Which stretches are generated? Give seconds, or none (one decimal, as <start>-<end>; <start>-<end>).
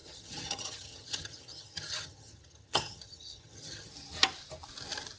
0.0-3.9